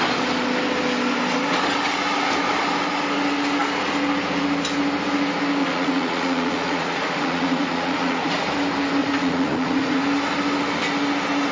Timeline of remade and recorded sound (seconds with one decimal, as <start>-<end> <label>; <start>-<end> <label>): 0.0-5.6 recorded; 5.6-8.3 remade; 8.3-9.0 recorded; 9.0-10.0 remade; 10.0-11.5 recorded